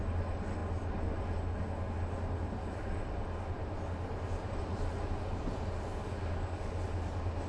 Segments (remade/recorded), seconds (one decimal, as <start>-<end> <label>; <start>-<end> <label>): 0.0-6.0 recorded; 6.0-6.8 remade; 6.8-7.5 recorded